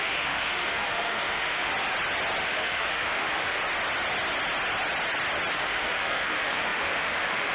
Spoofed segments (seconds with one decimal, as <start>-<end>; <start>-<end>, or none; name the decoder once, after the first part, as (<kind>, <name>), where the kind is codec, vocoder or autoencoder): 0.0-1.7 (autoencoder, DAC-VAE); 2.4-3.6; 5.5-7.5